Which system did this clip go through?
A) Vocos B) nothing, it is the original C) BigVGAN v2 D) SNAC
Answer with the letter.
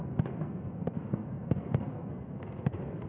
D